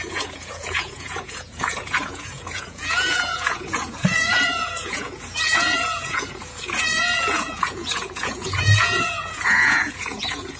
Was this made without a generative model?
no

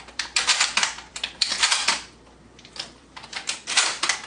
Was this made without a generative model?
no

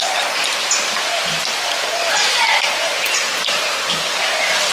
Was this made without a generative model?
yes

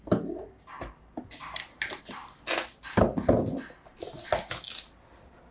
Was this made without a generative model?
yes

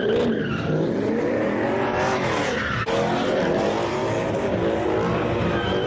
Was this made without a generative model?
yes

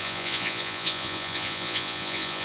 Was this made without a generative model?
no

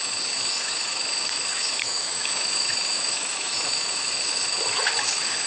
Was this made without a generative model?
no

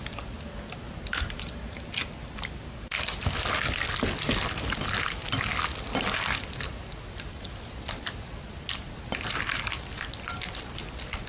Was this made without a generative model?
yes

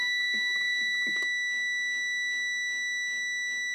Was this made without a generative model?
yes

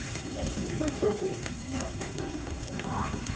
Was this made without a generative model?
no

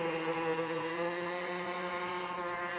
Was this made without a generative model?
no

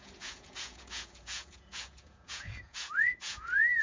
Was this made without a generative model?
no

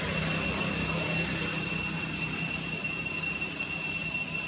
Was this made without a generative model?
yes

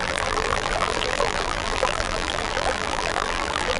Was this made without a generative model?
no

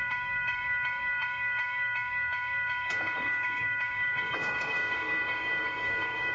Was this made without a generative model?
no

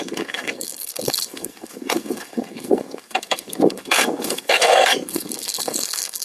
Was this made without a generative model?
no